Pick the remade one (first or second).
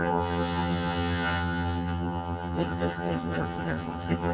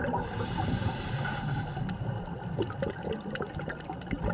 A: first